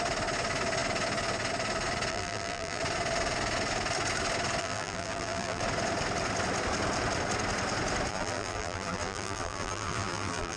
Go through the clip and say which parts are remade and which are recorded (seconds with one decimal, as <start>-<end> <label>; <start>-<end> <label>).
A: 0.0-2.1 recorded; 2.1-2.8 remade; 2.8-4.6 recorded; 4.6-5.6 remade; 5.6-8.1 recorded; 8.1-10.6 remade